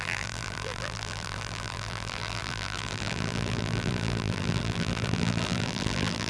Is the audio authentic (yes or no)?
no